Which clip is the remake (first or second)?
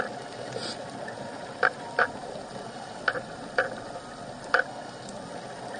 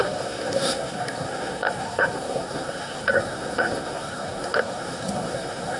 second